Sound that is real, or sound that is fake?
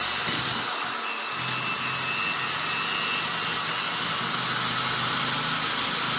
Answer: real